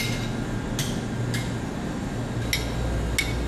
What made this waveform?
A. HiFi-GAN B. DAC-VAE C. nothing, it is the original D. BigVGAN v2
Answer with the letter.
C